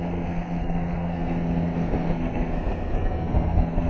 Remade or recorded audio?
remade